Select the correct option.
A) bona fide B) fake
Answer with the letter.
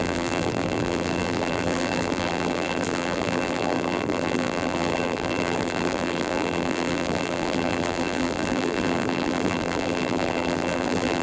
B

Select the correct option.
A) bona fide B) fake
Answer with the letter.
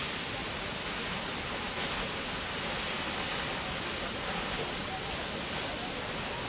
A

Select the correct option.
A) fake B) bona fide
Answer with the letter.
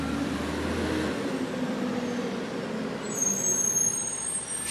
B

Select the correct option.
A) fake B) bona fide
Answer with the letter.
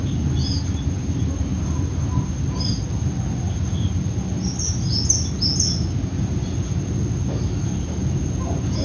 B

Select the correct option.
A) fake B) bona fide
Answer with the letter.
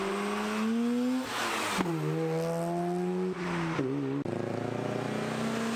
B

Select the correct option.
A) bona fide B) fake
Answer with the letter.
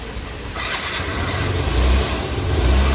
A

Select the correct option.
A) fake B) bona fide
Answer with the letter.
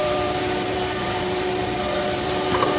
A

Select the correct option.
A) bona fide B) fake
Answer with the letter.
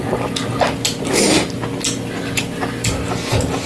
A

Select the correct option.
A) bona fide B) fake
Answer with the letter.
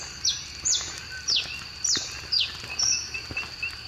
A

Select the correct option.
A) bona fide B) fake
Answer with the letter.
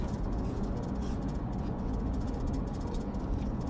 B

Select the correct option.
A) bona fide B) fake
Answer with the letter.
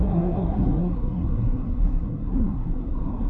B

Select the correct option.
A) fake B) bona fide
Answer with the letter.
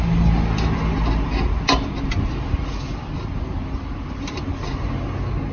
B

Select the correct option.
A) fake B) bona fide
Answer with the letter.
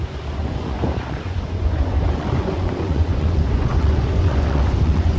A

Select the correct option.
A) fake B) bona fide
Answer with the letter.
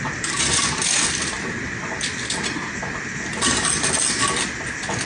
B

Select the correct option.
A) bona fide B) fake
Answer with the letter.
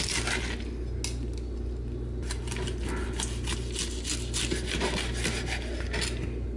A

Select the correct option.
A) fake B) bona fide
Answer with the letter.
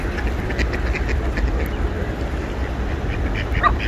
B